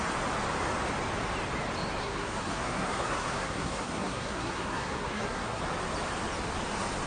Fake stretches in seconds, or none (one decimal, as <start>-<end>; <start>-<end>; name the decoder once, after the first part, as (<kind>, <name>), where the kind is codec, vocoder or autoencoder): 2.0-5.6 (codec, SNAC)